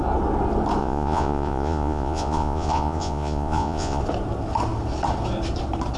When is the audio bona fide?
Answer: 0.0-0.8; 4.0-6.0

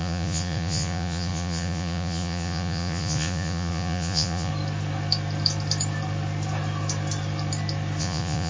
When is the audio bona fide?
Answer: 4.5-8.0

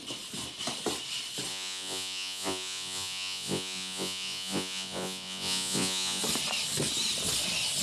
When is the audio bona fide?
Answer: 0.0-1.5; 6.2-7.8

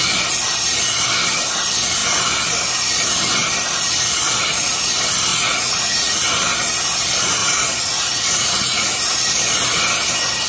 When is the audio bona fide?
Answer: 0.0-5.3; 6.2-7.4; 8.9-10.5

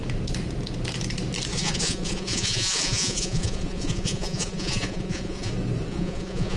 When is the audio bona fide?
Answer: 0.0-1.5; 5.5-5.9

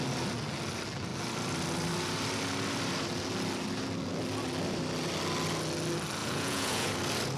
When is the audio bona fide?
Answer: 0.0-6.2; 6.9-7.4

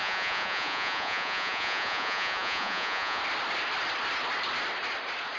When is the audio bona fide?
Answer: 3.2-5.4

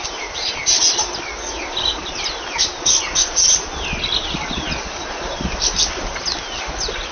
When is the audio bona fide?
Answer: 0.0-7.1